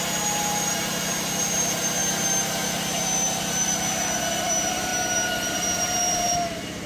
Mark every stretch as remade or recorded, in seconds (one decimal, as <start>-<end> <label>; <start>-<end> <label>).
0.0-4.9 remade; 4.9-5.5 recorded; 5.5-6.9 remade